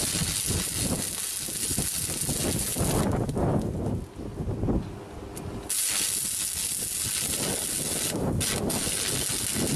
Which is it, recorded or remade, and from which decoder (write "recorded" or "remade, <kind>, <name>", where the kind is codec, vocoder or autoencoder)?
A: recorded